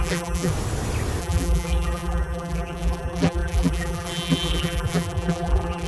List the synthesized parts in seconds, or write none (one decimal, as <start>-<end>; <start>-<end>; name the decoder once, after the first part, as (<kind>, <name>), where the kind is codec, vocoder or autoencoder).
0.0-0.5 (vocoder, BigVGAN v2); 1.2-5.9